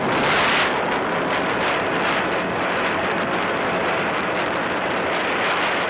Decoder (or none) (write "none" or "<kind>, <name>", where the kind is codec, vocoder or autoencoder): none